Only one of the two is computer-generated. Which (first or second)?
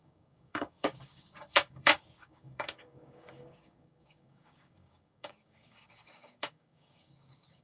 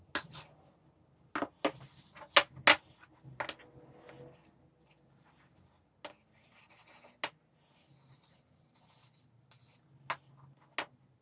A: first